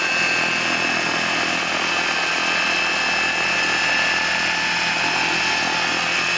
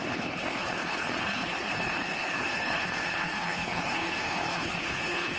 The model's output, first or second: second